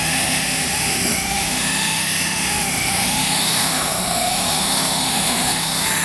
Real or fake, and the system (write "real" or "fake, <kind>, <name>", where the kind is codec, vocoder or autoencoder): fake, autoencoder, DAC-VAE